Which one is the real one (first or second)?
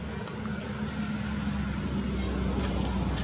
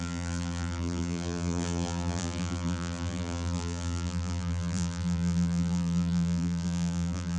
first